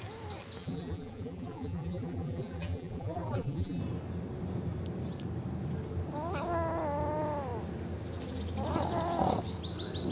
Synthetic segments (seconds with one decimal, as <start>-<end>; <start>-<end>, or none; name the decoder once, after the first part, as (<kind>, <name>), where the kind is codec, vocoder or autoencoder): 0.6-3.8 (vocoder, BigVGAN v2)